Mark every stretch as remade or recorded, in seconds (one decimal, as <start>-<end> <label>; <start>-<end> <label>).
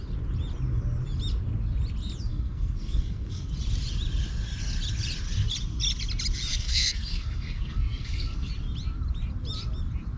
0.0-2.3 recorded; 2.3-3.5 remade; 3.5-6.5 recorded; 6.5-8.5 remade; 8.5-10.2 recorded